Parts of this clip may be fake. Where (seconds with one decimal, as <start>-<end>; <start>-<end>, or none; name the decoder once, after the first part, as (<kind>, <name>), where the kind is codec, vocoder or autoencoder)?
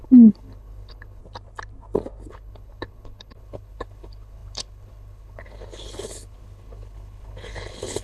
0.0-1.2 (codec, HILCodec); 2.3-8.0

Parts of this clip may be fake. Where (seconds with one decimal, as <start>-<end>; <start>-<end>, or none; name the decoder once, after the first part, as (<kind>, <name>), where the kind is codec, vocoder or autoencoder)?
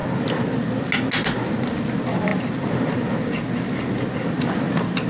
none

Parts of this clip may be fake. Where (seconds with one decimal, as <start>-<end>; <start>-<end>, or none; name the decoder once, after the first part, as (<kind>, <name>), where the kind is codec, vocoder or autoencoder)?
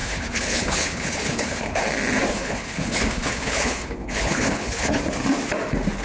0.0-1.8 (codec, HILCodec); 2.3-5.0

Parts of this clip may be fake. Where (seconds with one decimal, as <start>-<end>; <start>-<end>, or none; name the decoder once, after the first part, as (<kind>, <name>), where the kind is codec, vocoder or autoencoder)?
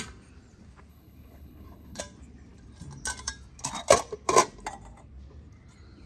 0.9-2.0 (codec, HILCodec)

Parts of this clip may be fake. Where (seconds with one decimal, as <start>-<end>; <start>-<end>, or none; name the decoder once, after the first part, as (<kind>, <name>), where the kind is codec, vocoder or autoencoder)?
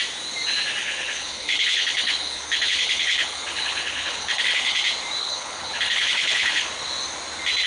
0.8-4.8 (codec, HILCodec); 5.2-6.7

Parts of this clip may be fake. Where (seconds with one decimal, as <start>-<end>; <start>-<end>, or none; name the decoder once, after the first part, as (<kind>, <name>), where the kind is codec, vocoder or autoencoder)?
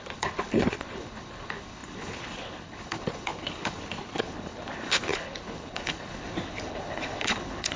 0.0-7.8 (codec, HILCodec)